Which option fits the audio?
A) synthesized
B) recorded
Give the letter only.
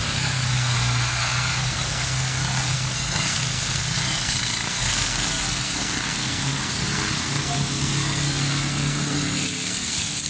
A